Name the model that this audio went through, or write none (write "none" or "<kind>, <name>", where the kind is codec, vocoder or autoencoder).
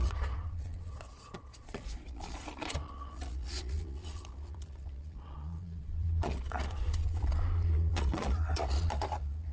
vocoder, Vocos